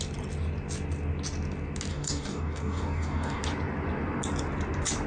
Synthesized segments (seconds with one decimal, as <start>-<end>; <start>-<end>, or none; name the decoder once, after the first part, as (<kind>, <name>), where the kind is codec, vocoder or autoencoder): 1.9-3.4 (codec, DAC)